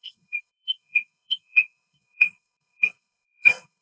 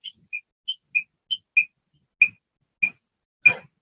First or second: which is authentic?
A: second